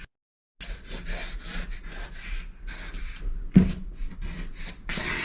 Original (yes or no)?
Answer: yes